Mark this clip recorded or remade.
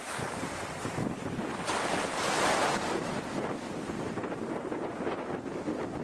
recorded